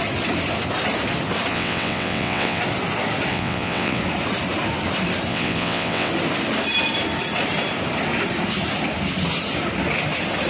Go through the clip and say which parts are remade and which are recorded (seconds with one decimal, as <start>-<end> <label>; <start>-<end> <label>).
0.0-1.5 recorded; 1.5-2.6 remade; 2.6-3.3 recorded; 3.3-4.0 remade; 4.0-5.3 recorded; 5.3-6.1 remade; 6.1-10.5 recorded